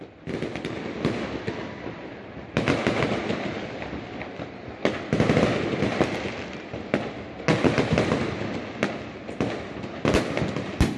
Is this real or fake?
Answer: real